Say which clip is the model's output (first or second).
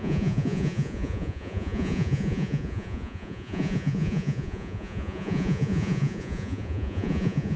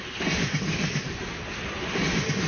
first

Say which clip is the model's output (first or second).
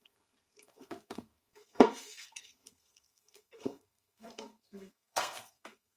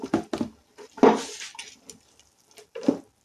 first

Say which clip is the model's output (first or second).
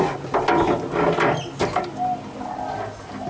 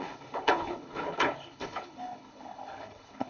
second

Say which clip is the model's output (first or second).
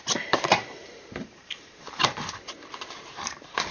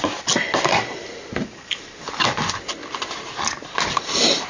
first